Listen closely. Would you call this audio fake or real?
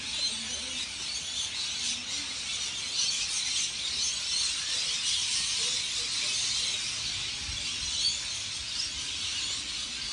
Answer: real